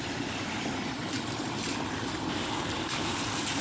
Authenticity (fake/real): real